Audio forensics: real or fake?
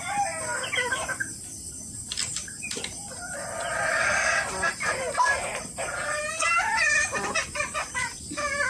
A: real